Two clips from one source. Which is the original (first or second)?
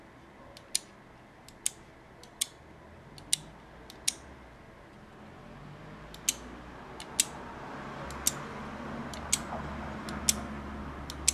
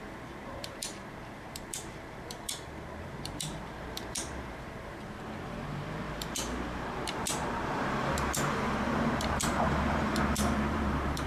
first